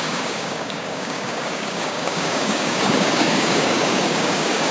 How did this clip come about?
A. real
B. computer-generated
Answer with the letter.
B